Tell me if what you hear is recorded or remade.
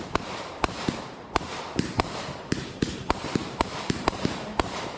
remade